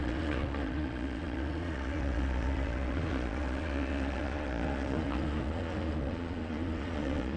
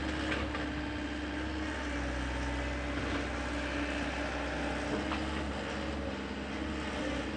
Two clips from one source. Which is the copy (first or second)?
first